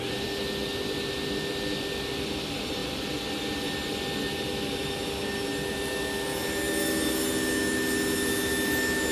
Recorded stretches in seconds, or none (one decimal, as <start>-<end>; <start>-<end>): 0.0-9.1